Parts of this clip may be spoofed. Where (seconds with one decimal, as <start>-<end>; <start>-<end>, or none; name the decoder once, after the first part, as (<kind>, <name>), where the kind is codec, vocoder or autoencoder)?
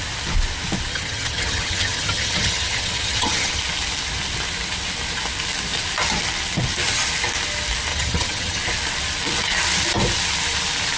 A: 0.9-3.6 (vocoder, HiFi-GAN); 7.9-8.6